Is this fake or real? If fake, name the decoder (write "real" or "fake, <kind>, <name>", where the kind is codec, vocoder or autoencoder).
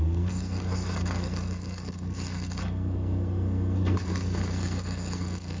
fake, codec, SNAC